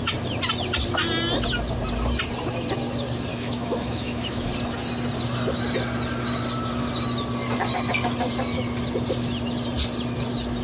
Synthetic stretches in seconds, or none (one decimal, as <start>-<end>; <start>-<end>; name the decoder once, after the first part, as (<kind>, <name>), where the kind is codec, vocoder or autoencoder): 3.3-4.5 (autoencoder, DAC-VAE)